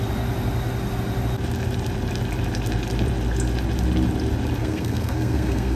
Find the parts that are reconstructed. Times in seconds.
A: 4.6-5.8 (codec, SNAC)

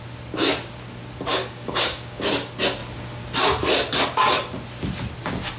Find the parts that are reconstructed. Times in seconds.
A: 1.3-2.3 (codec, DAC)

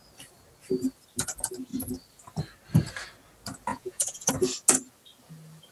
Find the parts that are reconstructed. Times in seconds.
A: 3.7-4.3 (vocoder, Vocos)